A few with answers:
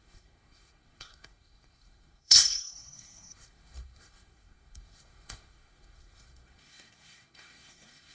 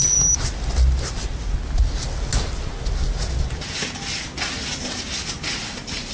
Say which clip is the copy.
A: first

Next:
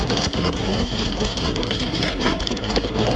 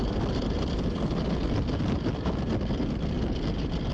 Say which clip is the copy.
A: first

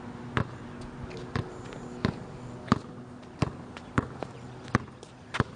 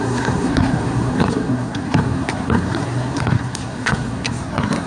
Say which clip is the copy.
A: second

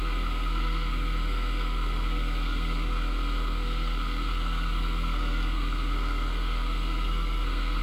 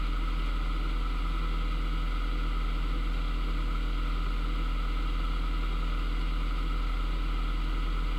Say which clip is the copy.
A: first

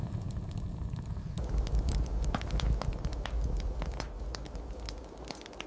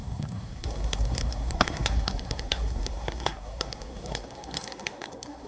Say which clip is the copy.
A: second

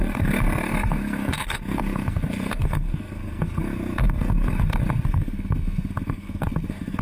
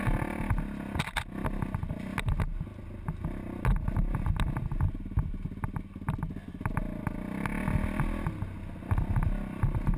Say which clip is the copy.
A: first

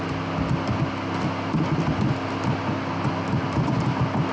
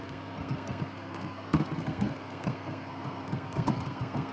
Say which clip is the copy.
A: second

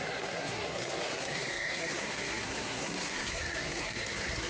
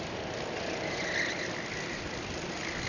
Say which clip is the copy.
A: first